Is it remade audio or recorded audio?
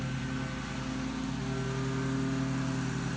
recorded